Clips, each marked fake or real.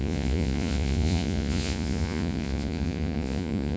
fake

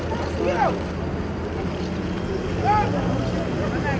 real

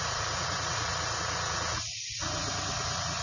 fake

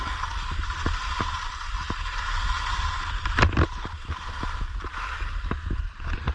real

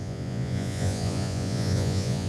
fake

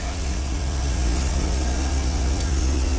fake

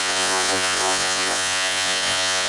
fake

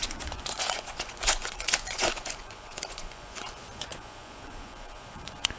fake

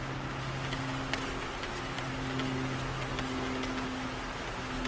real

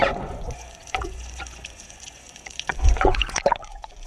fake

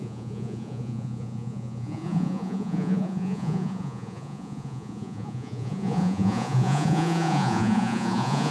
fake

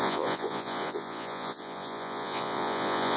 fake